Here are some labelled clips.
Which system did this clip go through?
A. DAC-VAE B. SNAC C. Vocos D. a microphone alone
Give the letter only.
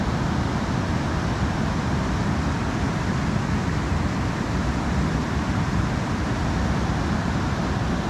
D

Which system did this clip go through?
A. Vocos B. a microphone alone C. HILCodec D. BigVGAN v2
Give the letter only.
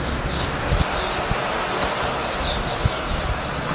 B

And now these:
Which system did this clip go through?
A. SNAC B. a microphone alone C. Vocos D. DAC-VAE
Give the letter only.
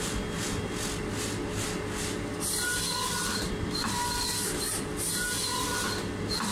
B